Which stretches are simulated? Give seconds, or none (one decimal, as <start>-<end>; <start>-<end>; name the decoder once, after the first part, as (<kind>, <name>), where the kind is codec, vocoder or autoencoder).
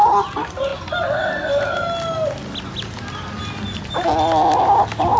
none